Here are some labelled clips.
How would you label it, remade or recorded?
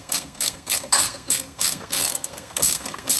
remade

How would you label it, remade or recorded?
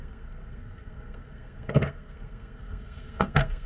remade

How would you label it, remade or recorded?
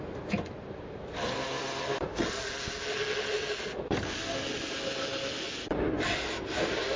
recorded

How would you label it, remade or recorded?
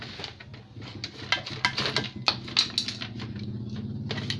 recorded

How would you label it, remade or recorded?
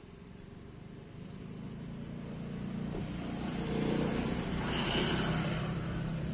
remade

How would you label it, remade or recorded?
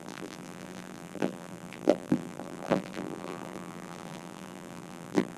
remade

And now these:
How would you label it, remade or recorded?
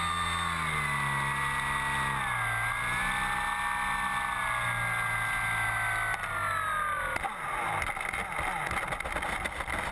recorded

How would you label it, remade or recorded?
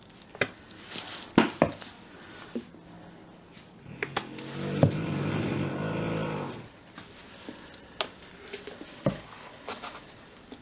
recorded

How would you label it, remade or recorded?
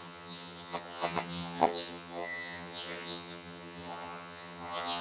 remade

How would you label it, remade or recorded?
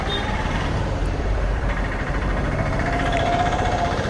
remade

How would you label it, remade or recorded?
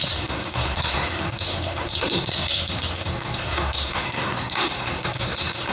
remade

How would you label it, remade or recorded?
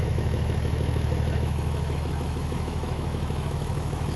remade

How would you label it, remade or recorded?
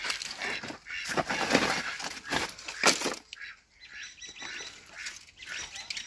recorded